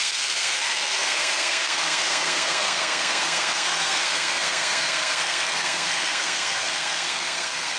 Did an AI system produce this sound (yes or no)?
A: yes